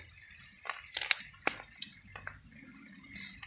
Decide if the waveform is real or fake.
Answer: real